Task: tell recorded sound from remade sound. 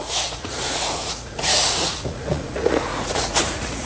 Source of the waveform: remade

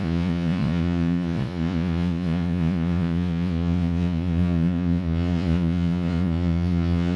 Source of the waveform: remade